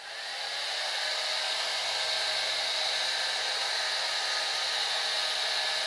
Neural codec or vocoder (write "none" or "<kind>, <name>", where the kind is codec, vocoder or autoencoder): none